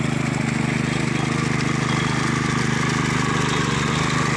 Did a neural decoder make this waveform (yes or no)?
no